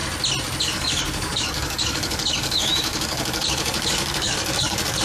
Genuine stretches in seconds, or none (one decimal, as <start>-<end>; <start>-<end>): 0.0-0.6